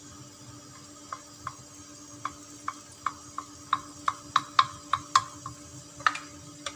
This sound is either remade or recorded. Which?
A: recorded